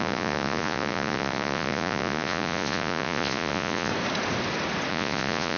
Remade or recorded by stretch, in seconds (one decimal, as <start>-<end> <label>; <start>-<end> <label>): 0.0-3.9 remade; 3.9-4.9 recorded; 4.9-5.6 remade

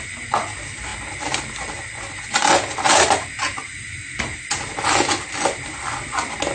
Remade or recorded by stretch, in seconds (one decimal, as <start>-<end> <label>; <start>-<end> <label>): 0.0-6.5 recorded

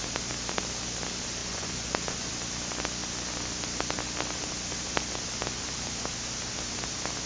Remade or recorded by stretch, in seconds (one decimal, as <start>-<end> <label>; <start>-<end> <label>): 0.0-1.4 recorded; 1.4-2.3 remade; 2.3-7.3 recorded

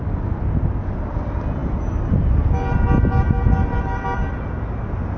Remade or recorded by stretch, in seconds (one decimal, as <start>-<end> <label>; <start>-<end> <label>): 0.0-5.2 recorded

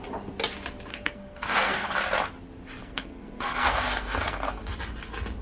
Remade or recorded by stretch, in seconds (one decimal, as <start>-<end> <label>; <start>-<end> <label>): 0.0-0.9 recorded; 0.9-1.9 remade; 1.9-2.8 recorded; 2.8-4.6 remade; 4.6-5.4 recorded

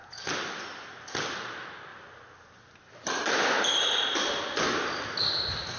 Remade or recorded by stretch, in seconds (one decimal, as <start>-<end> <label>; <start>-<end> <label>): 0.0-5.8 recorded

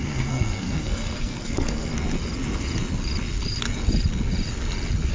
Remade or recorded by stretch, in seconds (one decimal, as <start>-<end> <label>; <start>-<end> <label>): 0.0-1.9 remade; 1.9-5.1 recorded